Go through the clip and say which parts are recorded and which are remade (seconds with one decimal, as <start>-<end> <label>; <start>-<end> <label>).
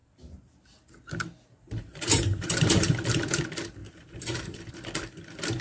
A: 0.0-3.4 remade; 3.4-3.8 recorded; 3.8-4.7 remade; 4.7-5.6 recorded